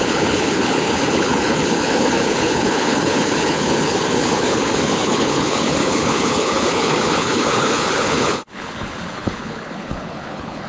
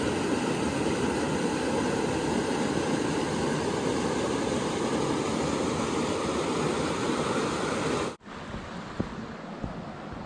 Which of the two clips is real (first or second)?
second